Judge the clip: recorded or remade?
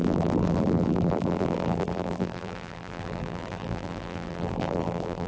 remade